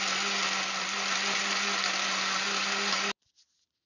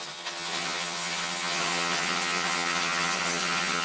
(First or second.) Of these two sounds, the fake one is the second